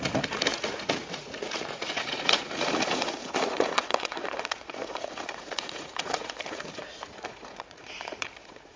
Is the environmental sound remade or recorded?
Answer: remade